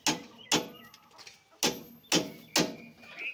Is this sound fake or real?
real